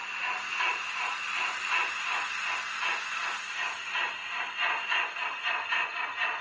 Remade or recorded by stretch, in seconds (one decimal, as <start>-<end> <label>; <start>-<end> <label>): 0.0-6.4 recorded